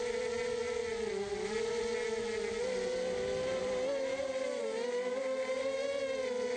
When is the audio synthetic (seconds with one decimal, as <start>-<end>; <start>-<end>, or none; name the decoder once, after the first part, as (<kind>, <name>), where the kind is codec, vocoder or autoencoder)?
3.6-6.0 (vocoder, BigVGAN v2)